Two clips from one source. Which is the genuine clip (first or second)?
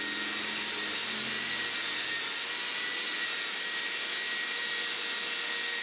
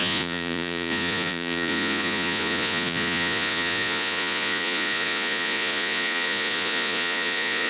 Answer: first